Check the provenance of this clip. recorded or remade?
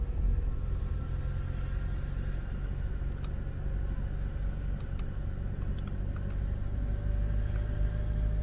recorded